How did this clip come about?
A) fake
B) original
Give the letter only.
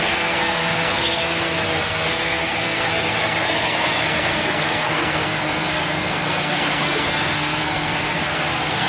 A